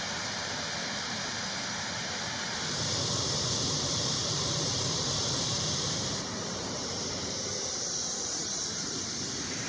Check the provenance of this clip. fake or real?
fake